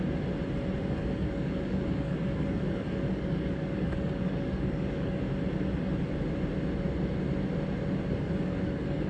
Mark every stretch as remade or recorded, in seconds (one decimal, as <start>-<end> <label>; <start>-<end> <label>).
0.0-0.8 recorded; 0.8-5.2 remade; 5.2-8.1 recorded; 8.1-9.1 remade